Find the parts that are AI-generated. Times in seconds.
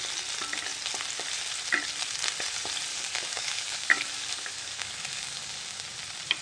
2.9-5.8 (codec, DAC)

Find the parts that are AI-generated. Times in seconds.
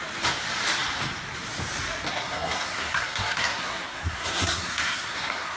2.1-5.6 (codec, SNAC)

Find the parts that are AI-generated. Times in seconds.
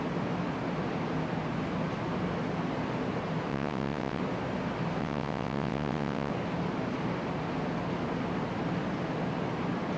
3.5-4.2 (vocoder, WaveNeXt); 5.0-6.3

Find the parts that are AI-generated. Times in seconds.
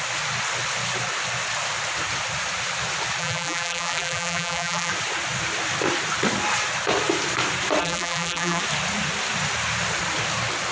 3.2-4.9 (vocoder, BigVGAN v2); 7.8-8.6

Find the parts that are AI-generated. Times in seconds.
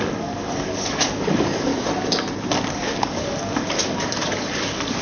0.0-1.7 (codec, DAC); 2.7-5.0